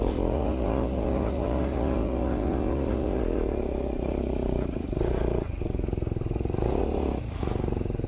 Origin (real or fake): fake